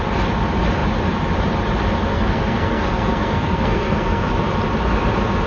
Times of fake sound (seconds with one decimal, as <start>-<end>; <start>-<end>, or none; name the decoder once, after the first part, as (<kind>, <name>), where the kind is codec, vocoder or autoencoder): 2.1-4.3 (codec, SNAC)